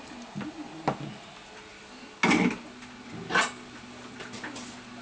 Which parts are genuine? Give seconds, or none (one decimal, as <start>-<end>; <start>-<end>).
0.0-5.0